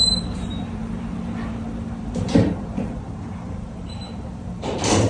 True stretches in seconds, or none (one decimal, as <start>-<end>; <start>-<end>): none